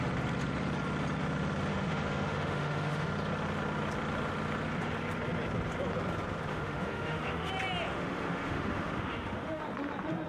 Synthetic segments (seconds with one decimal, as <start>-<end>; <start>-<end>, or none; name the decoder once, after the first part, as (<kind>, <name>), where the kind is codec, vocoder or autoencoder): 1.7-3.1 (autoencoder, DAC-VAE); 6.5-7.5; 7.9-9.6

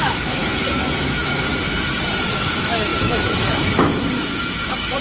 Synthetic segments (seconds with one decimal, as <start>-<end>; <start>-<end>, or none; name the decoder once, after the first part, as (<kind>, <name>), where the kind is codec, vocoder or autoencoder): 0.0-0.4 (autoencoder, DAC-VAE); 1.0-1.5; 2.2-5.0

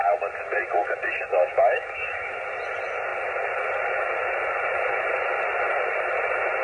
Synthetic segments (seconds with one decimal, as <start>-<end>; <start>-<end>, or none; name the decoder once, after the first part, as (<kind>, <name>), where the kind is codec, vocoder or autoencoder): 1.5-2.4 (autoencoder, DAC-VAE)

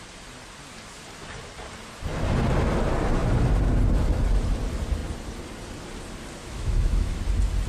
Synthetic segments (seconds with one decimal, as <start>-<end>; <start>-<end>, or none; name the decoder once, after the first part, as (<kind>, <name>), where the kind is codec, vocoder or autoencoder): 6.4-7.2 (autoencoder, DAC-VAE)

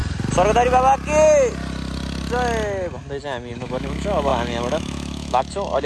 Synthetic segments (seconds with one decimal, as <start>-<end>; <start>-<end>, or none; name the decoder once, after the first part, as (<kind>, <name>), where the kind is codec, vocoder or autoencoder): 3.5-5.9 (autoencoder, DAC-VAE)

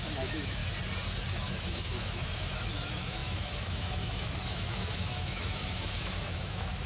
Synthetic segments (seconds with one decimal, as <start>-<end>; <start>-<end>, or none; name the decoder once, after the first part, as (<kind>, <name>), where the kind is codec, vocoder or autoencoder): 0.0-0.6 (autoencoder, DAC-VAE); 1.3-6.9

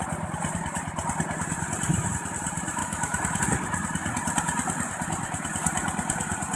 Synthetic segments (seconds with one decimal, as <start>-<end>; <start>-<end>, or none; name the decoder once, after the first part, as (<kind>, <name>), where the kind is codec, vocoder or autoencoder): 2.8-3.4 (autoencoder, DAC-VAE)